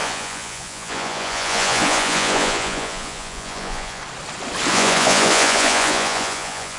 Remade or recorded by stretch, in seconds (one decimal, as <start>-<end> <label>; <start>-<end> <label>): 0.0-4.0 remade; 4.0-4.7 recorded; 4.7-6.8 remade